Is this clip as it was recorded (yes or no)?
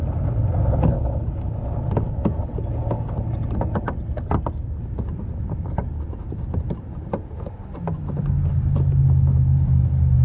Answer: yes